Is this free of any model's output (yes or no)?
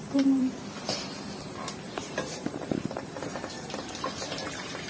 no